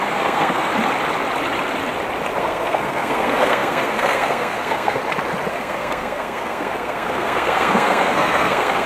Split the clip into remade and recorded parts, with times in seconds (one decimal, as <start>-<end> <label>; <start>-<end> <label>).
0.0-0.7 remade; 0.7-2.4 recorded; 2.4-5.0 remade; 5.0-5.5 recorded; 5.5-8.9 remade